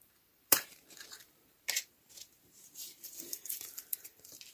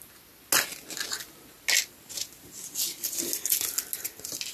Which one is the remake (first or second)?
first